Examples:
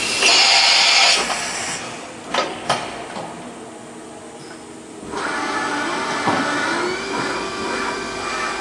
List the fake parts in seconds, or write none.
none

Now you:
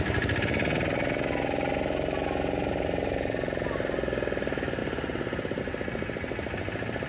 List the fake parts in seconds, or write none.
none